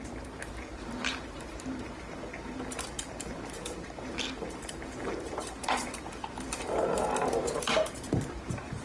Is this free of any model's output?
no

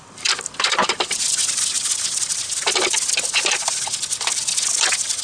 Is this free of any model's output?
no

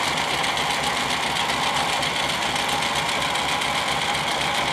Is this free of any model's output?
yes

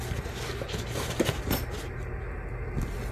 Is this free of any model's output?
yes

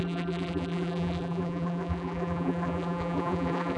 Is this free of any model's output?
no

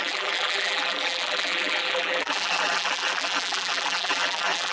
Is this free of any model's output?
no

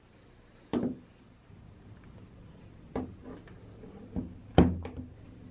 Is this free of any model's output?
no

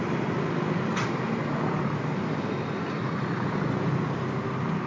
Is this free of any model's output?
yes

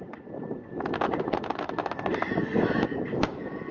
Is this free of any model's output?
no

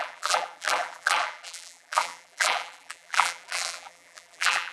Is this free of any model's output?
no